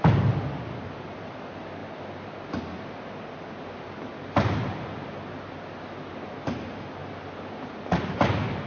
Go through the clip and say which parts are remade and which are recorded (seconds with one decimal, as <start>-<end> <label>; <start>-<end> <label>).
0.0-8.7 recorded